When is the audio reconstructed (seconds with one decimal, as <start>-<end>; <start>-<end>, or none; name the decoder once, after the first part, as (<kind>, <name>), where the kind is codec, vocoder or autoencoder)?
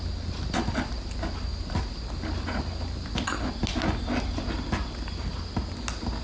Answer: none